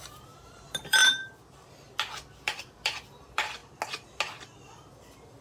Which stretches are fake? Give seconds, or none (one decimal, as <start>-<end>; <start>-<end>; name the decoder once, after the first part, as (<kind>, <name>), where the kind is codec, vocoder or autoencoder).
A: 0.0-1.0 (vocoder, BigVGAN v2); 1.7-3.6